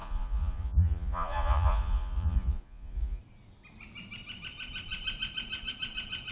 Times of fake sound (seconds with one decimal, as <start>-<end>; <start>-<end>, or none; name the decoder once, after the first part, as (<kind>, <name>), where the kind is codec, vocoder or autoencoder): 0.0-3.2 (vocoder, Vocos)

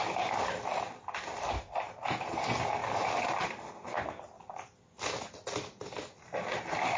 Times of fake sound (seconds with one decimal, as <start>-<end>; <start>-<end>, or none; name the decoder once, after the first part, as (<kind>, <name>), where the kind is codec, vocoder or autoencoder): none